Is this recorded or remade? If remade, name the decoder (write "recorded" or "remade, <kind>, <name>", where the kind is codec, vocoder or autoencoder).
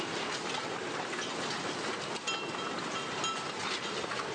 recorded